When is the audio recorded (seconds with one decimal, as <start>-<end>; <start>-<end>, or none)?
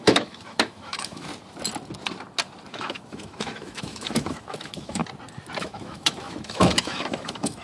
1.3-2.7; 5.0-5.6